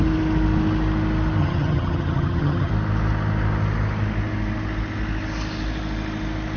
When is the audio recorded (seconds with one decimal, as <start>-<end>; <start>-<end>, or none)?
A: 0.0-1.4; 2.7-6.6